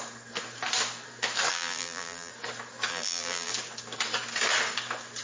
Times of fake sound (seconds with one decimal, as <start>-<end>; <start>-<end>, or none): 1.5-2.3; 2.9-3.5